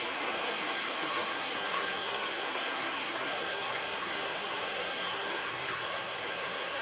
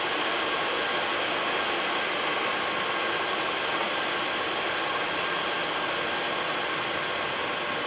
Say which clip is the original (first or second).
second